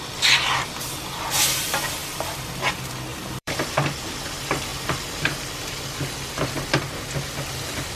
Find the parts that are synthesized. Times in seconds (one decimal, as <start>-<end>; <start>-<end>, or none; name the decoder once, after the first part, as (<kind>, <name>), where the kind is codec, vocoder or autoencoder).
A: 3.1-3.9 (vocoder, BigVGAN v2)

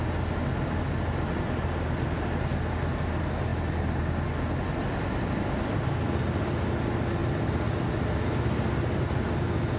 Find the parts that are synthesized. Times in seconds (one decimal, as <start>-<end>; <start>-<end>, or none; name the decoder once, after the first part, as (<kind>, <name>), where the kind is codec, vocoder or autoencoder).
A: 7.2-8.2 (vocoder, BigVGAN v2)